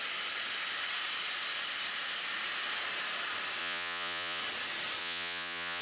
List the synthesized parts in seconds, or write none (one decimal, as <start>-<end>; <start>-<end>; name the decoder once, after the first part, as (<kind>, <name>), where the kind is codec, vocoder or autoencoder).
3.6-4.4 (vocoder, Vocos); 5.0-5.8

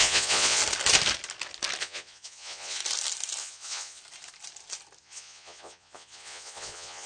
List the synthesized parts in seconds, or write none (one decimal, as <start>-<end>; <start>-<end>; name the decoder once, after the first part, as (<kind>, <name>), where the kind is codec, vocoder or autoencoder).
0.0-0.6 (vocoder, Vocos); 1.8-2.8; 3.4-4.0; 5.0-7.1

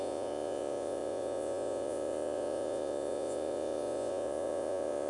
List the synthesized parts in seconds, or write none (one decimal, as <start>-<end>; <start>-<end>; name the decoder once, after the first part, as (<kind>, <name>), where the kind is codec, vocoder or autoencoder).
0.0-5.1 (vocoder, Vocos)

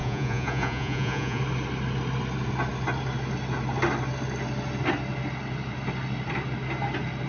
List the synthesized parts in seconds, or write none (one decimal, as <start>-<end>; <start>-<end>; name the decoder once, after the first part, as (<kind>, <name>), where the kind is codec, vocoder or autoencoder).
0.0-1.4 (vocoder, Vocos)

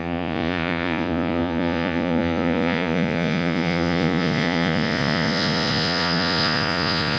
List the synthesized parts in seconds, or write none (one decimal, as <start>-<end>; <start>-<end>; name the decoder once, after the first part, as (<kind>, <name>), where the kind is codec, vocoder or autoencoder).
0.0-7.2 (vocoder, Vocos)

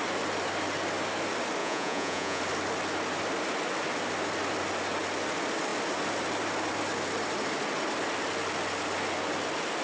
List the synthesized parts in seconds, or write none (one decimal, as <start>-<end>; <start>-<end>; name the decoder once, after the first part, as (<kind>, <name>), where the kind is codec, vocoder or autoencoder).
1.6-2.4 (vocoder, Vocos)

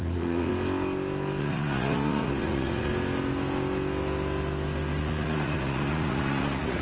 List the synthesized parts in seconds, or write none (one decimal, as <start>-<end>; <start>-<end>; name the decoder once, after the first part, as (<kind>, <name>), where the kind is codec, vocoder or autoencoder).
0.0-0.5 (vocoder, Vocos); 1.4-2.9; 5.0-6.8